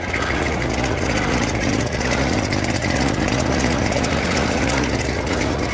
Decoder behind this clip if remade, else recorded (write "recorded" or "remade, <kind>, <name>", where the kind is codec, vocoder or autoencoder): remade, vocoder, Vocos